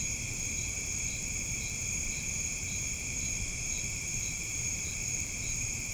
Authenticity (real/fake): fake